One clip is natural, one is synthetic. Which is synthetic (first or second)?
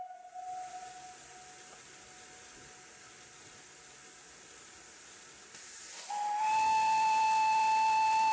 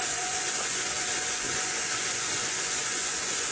second